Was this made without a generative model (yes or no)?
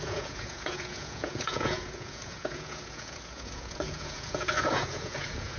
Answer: no